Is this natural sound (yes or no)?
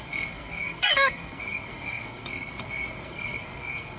no